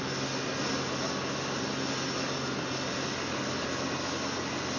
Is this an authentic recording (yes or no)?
yes